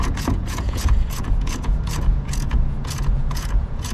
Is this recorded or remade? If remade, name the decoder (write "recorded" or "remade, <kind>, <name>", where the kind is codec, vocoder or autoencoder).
remade, vocoder, Vocos